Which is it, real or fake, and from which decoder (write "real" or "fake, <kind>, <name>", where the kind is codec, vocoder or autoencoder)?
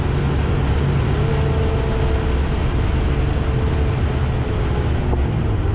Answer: real